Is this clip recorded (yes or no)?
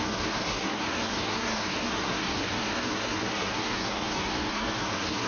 no